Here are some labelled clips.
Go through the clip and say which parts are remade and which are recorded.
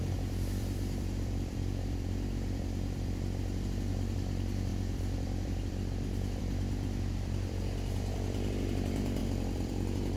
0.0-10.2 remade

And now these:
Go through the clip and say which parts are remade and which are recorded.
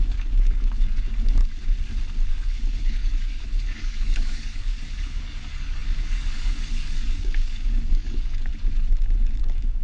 0.0-1.4 remade; 1.4-2.3 recorded; 2.3-8.5 remade; 8.5-9.4 recorded; 9.4-9.8 remade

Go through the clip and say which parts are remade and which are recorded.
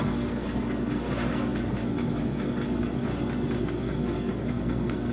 0.0-3.1 remade; 3.1-3.6 recorded; 3.6-5.1 remade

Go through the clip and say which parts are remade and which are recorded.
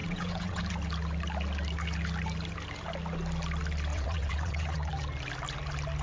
0.0-0.6 remade; 0.6-3.9 recorded; 3.9-4.9 remade; 4.9-6.0 recorded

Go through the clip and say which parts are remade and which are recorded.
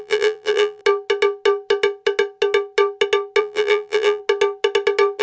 0.0-0.8 remade; 0.8-3.4 recorded; 3.4-4.2 remade; 4.2-5.2 recorded